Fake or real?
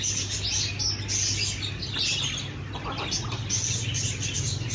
real